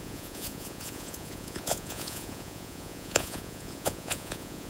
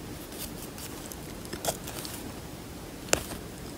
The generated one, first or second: first